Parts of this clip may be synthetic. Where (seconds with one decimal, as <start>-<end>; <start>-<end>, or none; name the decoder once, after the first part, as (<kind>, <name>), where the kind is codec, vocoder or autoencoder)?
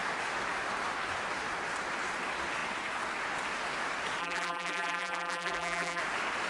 4.2-6.0 (vocoder, BigVGAN v2)